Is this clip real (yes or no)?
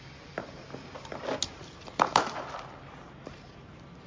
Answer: yes